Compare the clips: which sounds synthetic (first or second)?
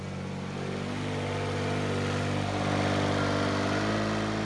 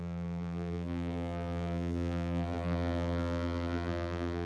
second